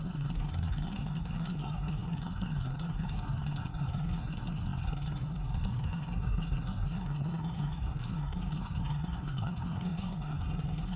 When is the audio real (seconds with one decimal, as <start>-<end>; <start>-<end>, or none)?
none